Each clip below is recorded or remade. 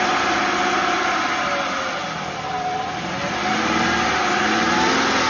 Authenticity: recorded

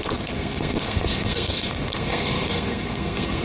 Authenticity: remade